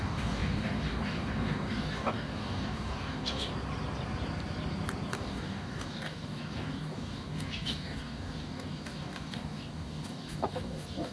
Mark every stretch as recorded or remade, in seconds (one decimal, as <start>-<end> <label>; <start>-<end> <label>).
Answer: 0.0-3.5 remade; 3.5-5.1 recorded; 5.1-11.1 remade